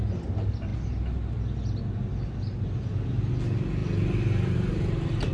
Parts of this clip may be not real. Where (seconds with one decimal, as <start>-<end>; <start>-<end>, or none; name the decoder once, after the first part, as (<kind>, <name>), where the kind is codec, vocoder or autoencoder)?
none